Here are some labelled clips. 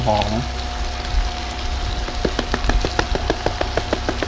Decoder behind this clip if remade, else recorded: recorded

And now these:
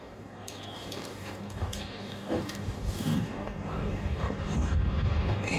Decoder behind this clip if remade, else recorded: remade, codec, DAC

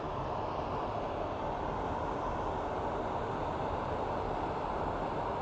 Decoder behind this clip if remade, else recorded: recorded